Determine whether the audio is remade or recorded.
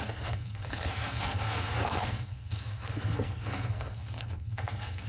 remade